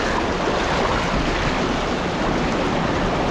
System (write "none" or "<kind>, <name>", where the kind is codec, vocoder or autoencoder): none